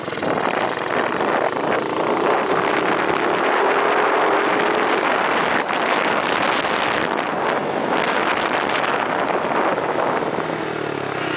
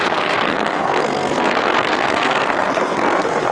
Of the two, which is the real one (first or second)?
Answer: first